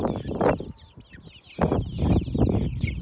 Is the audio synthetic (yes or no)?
no